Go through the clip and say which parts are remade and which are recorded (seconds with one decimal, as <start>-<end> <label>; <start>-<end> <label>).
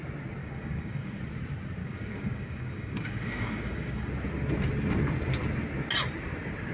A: 0.0-0.4 recorded; 0.4-1.2 remade; 1.2-1.8 recorded; 1.8-4.1 remade; 4.1-6.7 recorded